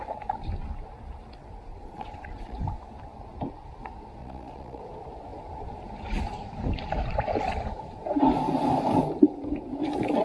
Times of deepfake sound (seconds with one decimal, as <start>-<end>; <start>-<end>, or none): 1.7-2.6; 4.2-4.8